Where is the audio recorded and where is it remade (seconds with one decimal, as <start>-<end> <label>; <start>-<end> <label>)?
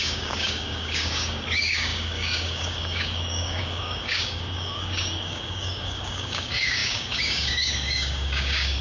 0.0-8.8 remade